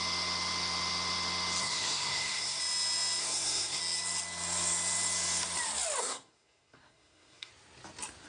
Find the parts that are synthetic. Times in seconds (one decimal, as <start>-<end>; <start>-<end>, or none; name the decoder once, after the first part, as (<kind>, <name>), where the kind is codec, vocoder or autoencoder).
1.6-2.6 (codec, SNAC); 3.2-3.8; 6.0-7.5